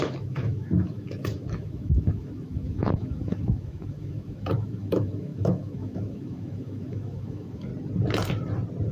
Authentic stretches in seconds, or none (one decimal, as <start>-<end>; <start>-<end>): 7.7-8.9